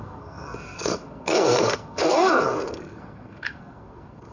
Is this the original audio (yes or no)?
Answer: no